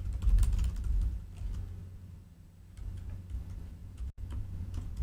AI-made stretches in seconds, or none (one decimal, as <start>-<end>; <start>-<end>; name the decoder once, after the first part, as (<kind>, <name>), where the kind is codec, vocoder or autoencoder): 3.8-5.0 (vocoder, Vocos)